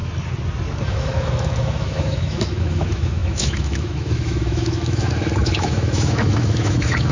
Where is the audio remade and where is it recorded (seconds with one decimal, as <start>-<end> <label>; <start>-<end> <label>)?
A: 0.0-0.8 recorded; 0.8-7.1 remade